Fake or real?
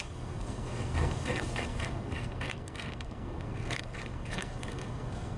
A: fake